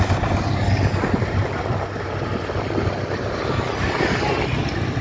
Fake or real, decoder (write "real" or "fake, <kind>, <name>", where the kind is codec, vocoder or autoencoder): real